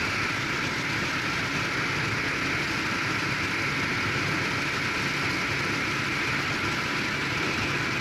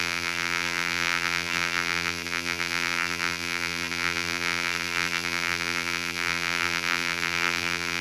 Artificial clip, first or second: second